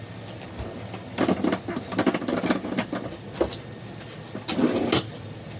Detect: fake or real real